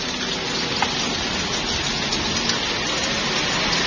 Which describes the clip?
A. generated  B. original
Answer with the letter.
B